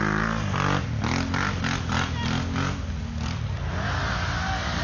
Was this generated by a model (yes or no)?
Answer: no